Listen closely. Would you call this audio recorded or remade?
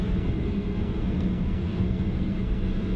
remade